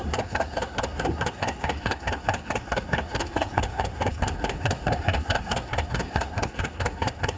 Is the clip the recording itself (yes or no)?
no